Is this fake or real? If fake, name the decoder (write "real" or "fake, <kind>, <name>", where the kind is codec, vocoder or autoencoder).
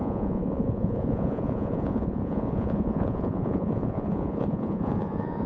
fake, vocoder, Vocos